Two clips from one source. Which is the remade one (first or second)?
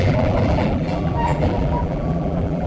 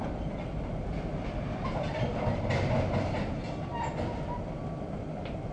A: first